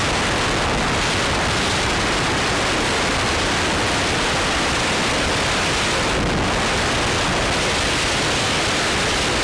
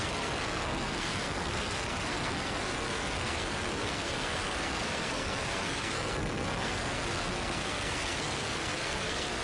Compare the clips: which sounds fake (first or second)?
second